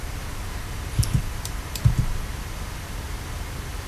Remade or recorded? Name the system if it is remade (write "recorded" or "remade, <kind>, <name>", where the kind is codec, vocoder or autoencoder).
remade, vocoder, BigVGAN v2